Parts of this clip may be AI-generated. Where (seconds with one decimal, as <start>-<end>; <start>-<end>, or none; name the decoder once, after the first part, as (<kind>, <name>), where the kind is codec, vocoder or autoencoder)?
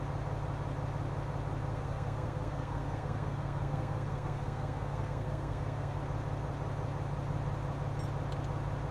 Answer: 1.7-6.0 (codec, SNAC)